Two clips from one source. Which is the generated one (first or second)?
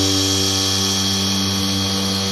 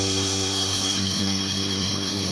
second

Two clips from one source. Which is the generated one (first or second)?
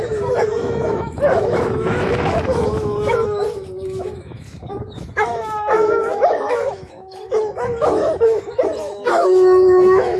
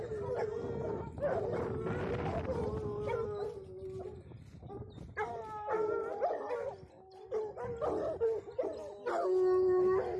first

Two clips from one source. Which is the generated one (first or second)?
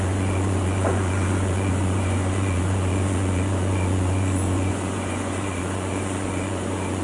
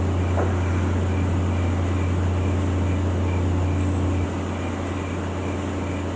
first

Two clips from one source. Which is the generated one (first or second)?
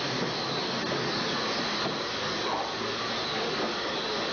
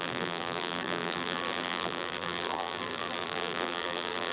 second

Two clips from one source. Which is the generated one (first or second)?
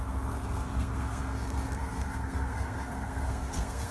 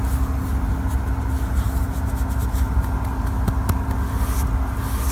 first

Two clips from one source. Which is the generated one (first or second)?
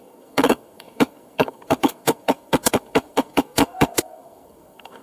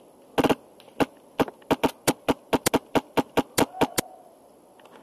first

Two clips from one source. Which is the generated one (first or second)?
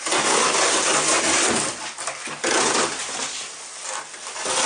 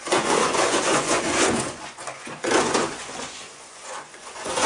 second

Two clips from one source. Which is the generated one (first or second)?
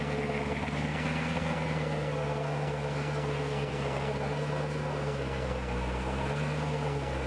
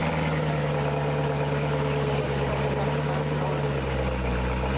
first